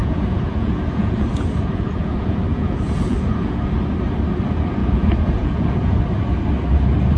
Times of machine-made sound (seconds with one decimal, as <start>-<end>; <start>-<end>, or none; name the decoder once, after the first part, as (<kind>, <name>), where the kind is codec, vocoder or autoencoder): 0.0-3.6 (vocoder, Vocos); 4.8-6.0